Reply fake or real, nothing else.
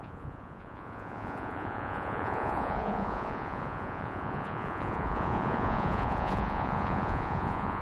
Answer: fake